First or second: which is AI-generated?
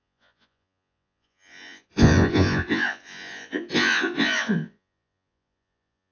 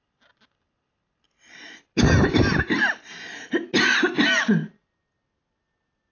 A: first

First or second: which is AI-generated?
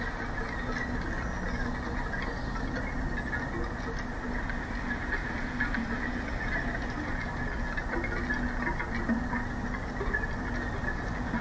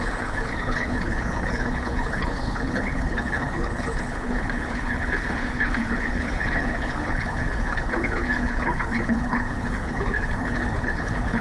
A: second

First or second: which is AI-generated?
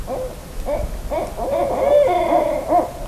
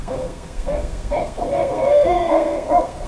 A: second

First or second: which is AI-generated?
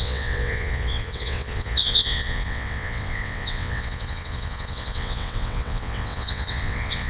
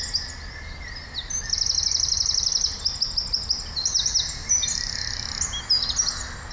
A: first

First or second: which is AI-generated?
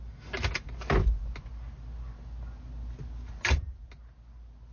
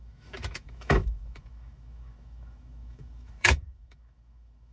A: second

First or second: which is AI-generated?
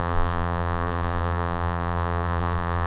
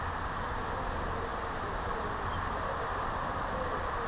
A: first